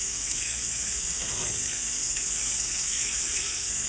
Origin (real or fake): fake